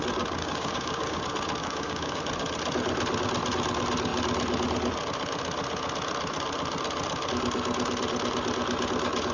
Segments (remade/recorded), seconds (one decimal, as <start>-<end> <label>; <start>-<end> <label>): 0.0-0.4 recorded; 0.4-1.2 remade; 1.2-1.6 recorded; 1.6-2.2 remade; 2.2-9.3 recorded

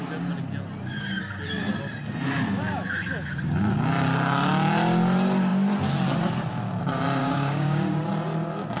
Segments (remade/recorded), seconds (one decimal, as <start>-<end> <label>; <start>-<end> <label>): 0.0-7.2 recorded; 7.2-8.1 remade; 8.1-8.8 recorded

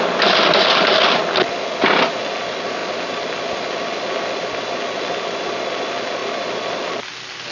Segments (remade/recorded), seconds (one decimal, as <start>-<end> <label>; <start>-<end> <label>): 0.0-7.5 recorded

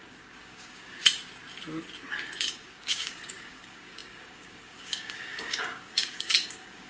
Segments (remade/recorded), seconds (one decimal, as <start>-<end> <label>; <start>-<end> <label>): 0.0-1.0 remade; 1.0-2.4 recorded; 2.4-6.9 remade